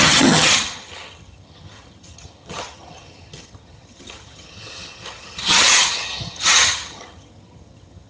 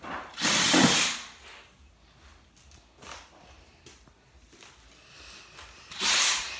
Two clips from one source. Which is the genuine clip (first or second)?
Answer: second